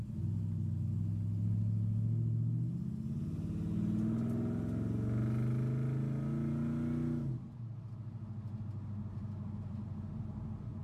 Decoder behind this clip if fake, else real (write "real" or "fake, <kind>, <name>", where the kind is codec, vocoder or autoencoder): real